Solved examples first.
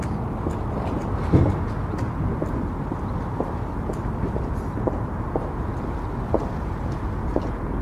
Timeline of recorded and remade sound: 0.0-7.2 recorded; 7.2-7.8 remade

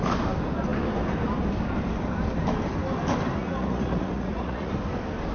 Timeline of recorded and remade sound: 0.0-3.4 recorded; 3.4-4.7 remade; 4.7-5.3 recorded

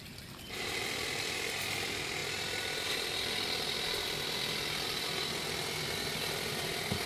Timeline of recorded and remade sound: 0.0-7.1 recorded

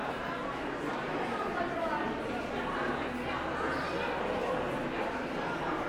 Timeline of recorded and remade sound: 0.0-2.5 remade; 2.5-4.4 recorded; 4.4-5.9 remade

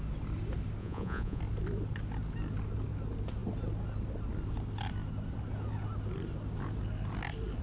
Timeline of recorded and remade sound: 0.0-0.8 recorded; 0.8-1.4 remade; 1.4-7.6 recorded